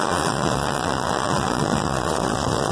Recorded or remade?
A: remade